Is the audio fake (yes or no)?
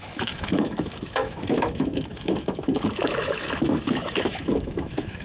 yes